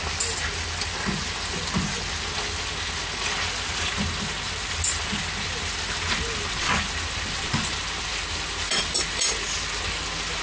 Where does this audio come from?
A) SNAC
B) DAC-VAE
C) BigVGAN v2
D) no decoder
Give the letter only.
D